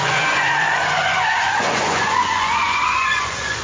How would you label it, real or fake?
fake